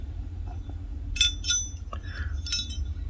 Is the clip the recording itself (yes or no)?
yes